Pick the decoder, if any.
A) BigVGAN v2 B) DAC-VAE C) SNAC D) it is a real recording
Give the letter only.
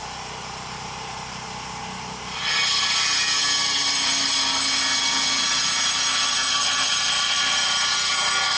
D